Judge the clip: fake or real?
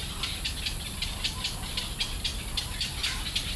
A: real